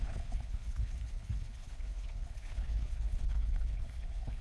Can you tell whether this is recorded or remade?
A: remade